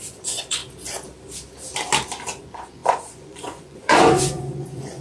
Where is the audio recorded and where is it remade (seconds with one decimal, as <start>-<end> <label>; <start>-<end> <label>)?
0.0-0.6 remade; 0.6-2.4 recorded; 2.4-5.0 remade